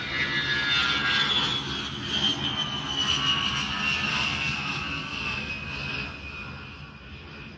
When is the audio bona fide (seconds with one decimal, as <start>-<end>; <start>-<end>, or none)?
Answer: 0.0-4.1; 5.5-7.6